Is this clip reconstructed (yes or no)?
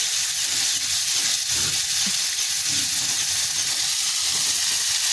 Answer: no